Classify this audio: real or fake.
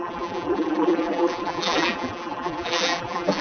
fake